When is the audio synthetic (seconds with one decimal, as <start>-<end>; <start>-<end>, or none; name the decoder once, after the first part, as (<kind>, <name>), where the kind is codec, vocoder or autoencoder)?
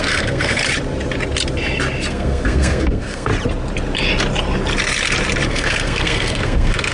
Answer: 0.0-0.6 (codec, SNAC); 2.1-3.3; 5.5-6.9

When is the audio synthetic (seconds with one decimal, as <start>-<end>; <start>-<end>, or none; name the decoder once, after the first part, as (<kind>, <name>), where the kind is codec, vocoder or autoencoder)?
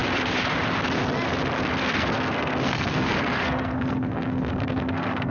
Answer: 1.7-5.3 (codec, SNAC)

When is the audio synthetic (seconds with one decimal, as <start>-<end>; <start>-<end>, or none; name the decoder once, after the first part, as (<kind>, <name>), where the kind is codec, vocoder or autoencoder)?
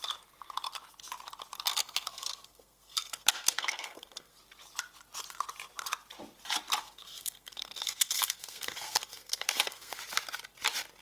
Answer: 1.7-4.4 (codec, SNAC); 6.8-10.0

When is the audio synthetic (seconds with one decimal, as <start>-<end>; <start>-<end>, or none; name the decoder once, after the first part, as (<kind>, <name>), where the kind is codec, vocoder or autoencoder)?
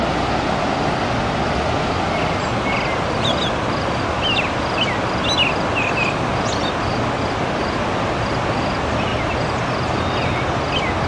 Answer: none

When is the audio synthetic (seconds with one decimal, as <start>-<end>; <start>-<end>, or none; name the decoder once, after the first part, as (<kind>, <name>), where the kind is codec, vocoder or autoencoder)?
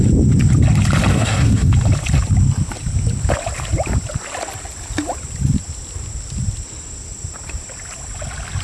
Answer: 1.1-1.7 (codec, SNAC)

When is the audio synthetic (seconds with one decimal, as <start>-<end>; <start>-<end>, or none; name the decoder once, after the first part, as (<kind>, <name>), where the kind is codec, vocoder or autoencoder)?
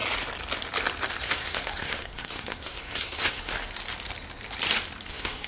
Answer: 1.2-3.5 (codec, SNAC); 5.1-5.5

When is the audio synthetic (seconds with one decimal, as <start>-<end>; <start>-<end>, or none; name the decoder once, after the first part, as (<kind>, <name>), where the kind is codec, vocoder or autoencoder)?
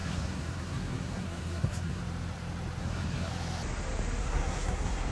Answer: 0.0-2.0 (codec, SNAC); 2.8-3.3; 4.2-5.1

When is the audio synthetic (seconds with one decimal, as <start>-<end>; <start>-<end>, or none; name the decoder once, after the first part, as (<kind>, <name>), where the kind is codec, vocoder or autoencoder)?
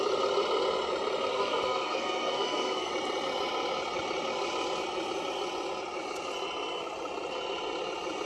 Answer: 1.3-2.9 (codec, SNAC)